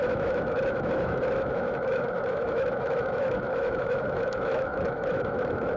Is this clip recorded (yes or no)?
no